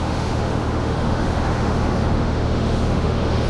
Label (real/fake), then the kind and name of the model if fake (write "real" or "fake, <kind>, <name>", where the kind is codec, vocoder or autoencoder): fake, autoencoder, DAC-VAE